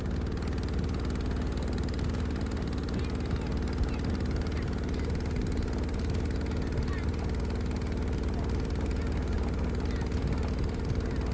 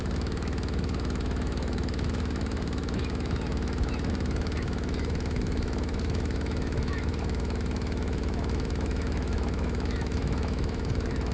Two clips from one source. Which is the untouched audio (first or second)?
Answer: first